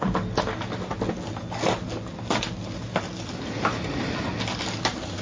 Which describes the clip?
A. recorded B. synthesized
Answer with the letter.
A